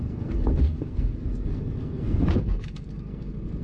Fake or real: fake